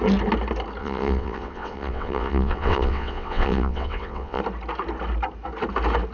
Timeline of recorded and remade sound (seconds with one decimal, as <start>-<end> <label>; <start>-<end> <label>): 0.0-0.8 recorded; 0.8-4.4 remade; 4.4-6.1 recorded